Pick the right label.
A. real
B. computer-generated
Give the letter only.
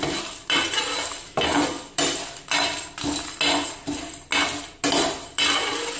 A